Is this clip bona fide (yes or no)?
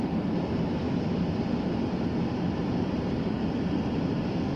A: yes